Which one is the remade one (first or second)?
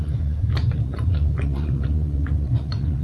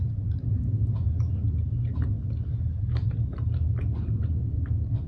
first